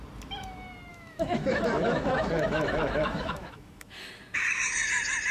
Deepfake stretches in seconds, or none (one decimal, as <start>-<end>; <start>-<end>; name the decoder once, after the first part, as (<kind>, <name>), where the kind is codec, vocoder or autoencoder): 0.9-4.1 (autoencoder, DAC-VAE)